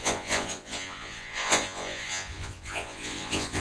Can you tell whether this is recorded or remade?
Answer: remade